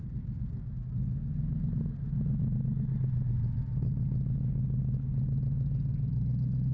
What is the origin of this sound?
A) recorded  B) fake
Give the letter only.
A